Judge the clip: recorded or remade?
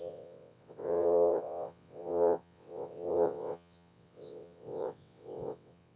remade